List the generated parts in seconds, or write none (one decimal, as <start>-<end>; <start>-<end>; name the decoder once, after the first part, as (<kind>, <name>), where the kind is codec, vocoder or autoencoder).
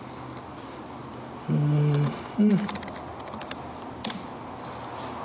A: 1.1-2.5 (vocoder, BigVGAN v2); 3.1-4.8